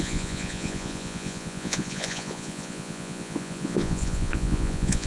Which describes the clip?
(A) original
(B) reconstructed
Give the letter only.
B